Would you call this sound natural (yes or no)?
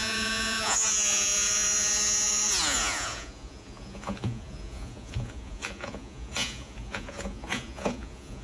no